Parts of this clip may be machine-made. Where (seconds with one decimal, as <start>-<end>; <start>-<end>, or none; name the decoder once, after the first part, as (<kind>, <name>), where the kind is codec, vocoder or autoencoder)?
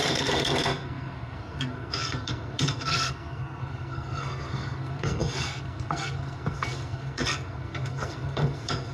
0.0-8.9 (codec, SNAC)